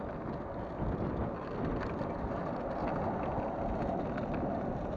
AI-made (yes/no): no